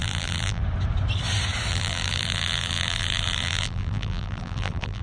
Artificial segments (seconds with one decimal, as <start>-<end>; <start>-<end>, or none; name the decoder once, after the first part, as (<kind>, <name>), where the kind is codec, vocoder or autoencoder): 0.0-0.6 (vocoder, BigVGAN v2); 1.7-5.0

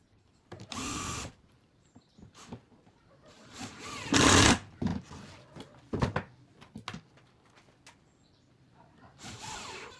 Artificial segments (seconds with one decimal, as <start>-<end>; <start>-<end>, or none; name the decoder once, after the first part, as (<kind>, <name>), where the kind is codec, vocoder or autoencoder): 0.0-4.9 (vocoder, BigVGAN v2); 8.5-10.0

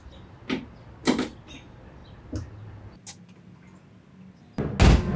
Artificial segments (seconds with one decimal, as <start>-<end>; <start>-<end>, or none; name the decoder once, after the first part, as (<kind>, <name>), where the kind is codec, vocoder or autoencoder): none

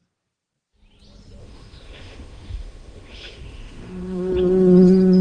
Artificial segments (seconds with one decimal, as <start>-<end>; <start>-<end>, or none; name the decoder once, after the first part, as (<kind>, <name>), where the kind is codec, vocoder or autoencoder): 1.4-4.3 (autoencoder, DAC-VAE)

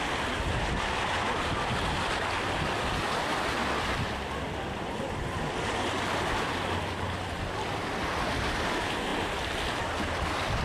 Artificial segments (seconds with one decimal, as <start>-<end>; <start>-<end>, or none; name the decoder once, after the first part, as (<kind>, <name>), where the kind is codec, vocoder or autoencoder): none

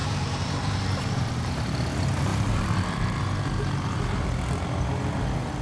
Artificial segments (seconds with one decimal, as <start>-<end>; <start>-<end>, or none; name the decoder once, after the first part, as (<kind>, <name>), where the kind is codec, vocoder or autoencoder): 0.0-1.5 (vocoder, BigVGAN v2); 2.3-3.2

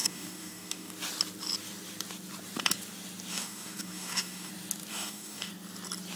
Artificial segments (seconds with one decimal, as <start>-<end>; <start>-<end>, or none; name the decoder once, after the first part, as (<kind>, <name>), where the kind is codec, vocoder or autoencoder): 0.0-0.9 (codec, DAC); 3.3-4.5; 4.9-5.5

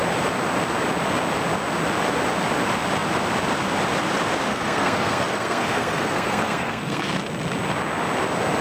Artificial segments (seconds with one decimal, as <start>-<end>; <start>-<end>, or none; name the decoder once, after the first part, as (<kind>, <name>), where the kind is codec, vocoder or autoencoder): 4.5-7.1 (codec, SNAC)